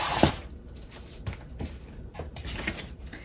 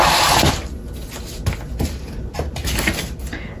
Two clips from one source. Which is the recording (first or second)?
second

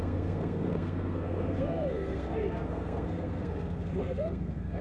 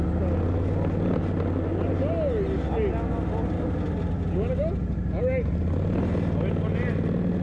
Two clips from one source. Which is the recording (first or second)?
second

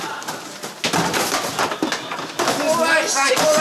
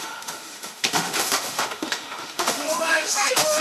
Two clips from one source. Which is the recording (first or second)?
first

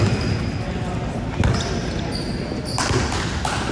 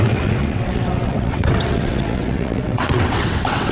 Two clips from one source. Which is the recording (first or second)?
first